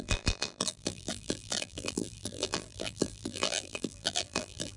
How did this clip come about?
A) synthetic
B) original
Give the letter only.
A